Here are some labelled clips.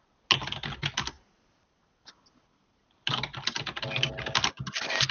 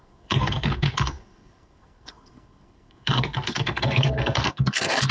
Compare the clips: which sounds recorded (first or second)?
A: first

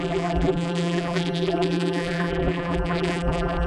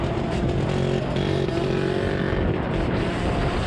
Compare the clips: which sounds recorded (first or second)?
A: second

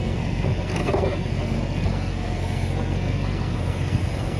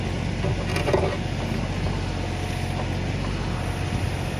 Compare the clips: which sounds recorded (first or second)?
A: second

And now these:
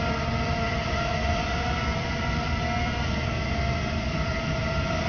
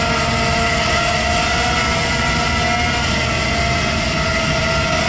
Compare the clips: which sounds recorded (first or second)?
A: second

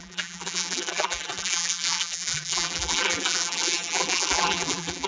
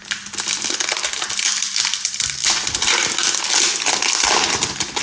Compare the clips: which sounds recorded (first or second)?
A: second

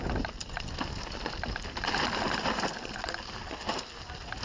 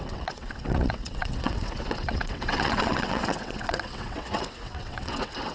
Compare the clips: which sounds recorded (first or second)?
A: first